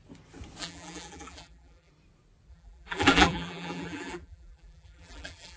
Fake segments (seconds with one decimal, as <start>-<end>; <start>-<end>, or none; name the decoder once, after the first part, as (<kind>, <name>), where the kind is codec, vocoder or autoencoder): 0.6-1.9 (vocoder, BigVGAN v2); 2.5-5.6